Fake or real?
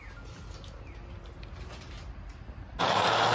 real